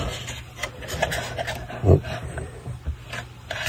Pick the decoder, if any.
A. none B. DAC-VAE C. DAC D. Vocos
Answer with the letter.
A